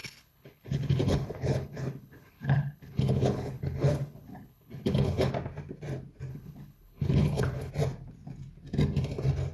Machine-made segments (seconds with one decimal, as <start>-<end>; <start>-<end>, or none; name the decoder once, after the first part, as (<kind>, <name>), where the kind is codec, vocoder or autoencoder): 0.0-5.3 (codec, HILCodec); 6.3-7.7